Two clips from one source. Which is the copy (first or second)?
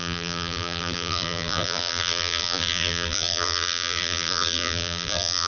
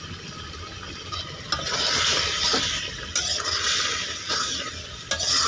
first